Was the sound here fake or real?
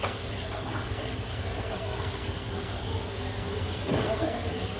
fake